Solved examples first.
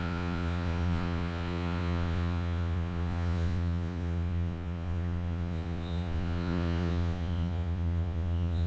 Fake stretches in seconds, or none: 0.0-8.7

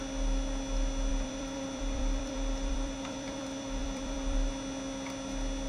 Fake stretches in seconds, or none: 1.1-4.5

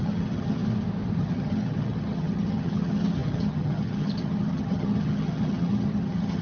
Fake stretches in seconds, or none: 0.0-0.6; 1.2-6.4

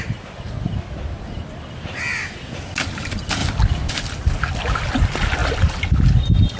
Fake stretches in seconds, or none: none